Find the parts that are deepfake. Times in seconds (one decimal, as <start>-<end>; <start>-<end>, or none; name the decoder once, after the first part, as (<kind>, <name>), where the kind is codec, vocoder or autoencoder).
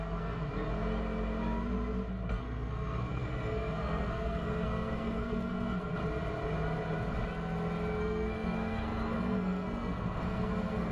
0.0-0.4 (codec, SNAC); 2.3-6.0; 8.0-10.9